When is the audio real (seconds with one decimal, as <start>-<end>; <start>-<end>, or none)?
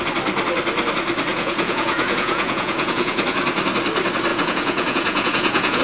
0.0-1.3; 3.2-4.3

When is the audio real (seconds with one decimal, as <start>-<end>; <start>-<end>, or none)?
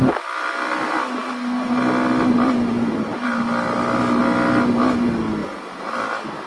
0.0-6.5